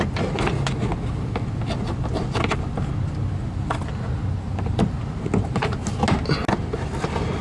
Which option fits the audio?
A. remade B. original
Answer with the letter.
B